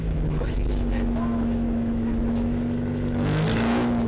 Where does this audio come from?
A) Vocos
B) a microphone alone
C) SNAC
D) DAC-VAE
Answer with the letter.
D